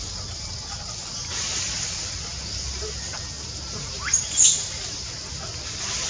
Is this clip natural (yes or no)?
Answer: yes